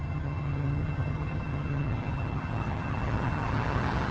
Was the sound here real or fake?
fake